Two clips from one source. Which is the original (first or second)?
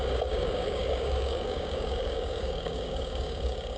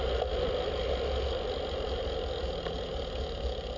second